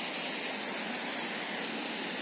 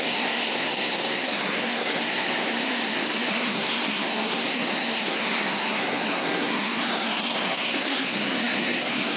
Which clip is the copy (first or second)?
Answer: second